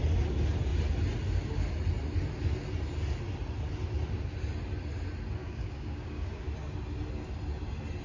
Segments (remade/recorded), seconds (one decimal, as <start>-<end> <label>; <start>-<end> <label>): 0.0-5.4 recorded; 5.4-6.5 remade; 6.5-8.0 recorded